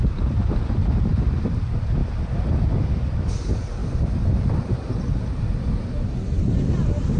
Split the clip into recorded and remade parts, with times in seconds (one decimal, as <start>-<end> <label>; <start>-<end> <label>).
0.0-7.2 recorded